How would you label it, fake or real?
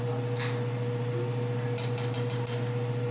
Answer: real